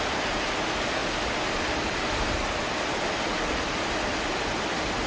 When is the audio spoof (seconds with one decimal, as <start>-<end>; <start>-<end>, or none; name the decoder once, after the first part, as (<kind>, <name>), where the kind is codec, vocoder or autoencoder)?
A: none